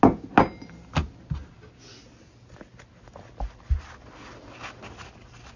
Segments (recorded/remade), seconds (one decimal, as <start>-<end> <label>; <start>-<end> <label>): 0.0-5.6 recorded